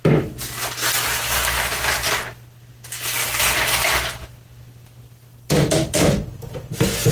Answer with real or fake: real